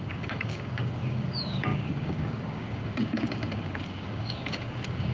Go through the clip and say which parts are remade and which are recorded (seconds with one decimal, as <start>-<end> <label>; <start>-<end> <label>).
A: 0.0-5.1 remade